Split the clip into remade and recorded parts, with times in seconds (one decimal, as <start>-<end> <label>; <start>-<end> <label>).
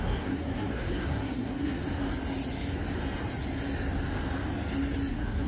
0.0-1.8 remade; 1.8-5.1 recorded; 5.1-5.5 remade